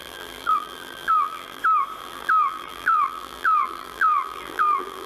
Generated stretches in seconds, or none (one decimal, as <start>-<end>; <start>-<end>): 0.0-1.6; 2.0-5.1